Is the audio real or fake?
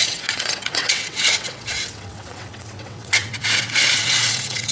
fake